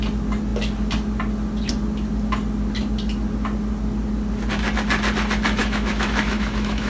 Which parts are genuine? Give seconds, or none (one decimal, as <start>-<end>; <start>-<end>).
0.0-5.6